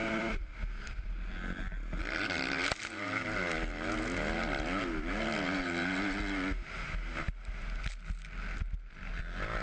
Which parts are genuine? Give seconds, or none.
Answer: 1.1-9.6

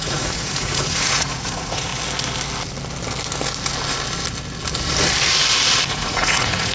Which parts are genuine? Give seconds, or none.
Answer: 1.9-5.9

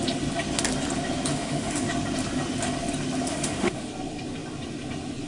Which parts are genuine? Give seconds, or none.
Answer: 0.0-1.3; 1.9-3.3; 3.9-5.3